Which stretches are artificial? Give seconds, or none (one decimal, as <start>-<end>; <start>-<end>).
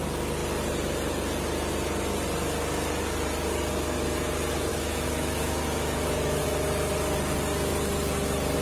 4.7-6.4